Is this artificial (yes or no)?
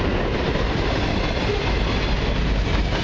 no